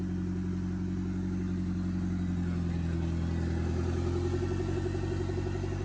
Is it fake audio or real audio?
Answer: real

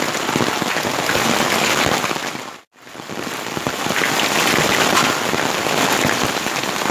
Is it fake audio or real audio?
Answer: real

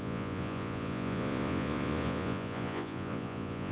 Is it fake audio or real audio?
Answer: fake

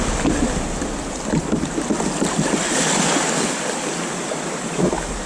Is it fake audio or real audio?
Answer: real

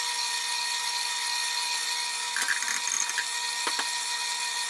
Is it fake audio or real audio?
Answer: real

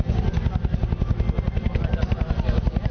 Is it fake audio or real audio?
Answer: real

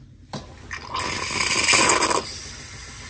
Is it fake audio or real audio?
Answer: real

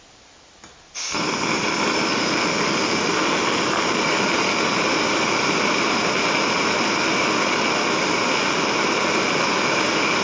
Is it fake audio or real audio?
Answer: real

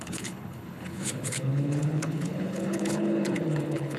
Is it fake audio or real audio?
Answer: fake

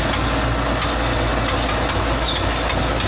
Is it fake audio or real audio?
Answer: real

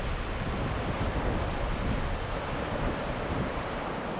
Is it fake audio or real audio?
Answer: real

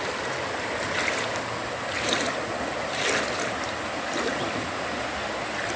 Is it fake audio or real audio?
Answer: real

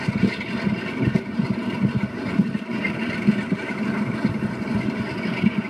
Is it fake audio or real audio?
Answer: fake